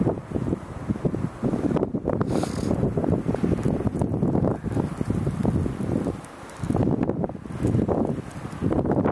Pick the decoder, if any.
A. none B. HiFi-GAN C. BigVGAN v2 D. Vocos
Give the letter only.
C